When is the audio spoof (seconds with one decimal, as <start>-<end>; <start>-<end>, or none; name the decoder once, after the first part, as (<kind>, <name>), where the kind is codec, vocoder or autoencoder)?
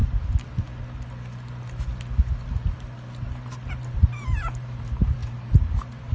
3.7-6.1 (vocoder, BigVGAN v2)